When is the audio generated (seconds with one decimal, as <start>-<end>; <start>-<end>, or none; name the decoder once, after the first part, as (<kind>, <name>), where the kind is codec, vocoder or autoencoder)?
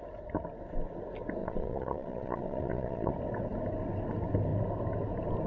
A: 1.4-3.1 (vocoder, Vocos)